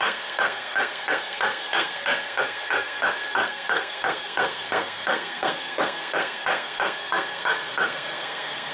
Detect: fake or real fake